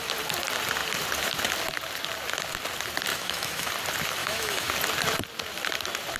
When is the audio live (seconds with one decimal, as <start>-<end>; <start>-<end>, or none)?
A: 0.0-3.1; 3.7-4.2; 4.7-6.2